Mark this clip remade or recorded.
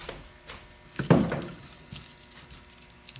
recorded